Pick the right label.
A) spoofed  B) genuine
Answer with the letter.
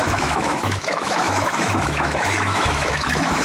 A